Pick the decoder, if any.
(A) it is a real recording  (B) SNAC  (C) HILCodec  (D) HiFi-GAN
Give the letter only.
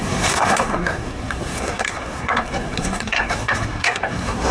B